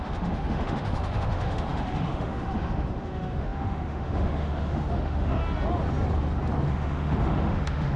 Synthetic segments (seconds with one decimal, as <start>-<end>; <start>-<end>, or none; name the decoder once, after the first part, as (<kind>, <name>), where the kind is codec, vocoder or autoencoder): 0.0-5.4 (autoencoder, DAC-VAE); 6.7-8.0